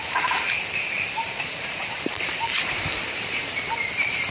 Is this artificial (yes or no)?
yes